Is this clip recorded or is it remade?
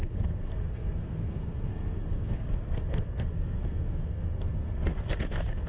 remade